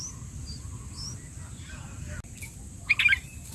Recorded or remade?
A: recorded